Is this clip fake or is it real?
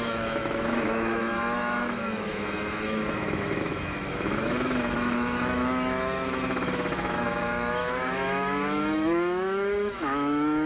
fake